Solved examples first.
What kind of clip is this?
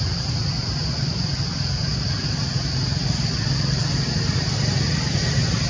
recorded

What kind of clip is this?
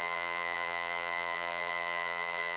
remade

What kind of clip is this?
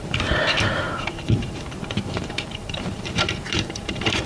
remade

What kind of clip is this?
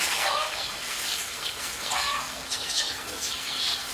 remade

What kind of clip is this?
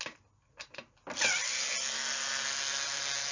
recorded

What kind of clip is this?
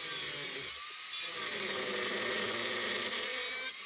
recorded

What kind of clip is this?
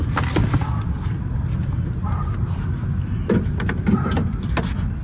recorded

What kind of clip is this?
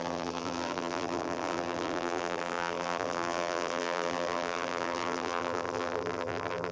remade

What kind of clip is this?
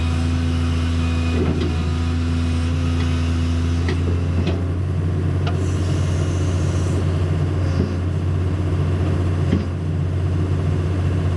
recorded